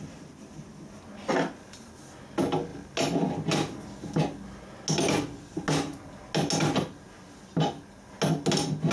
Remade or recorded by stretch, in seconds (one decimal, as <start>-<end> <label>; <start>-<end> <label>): 0.0-8.9 recorded